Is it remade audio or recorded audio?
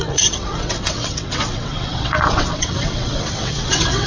remade